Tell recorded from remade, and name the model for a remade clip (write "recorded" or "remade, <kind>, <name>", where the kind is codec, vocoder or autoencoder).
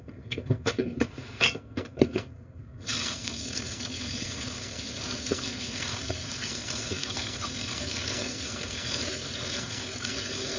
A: remade, codec, SNAC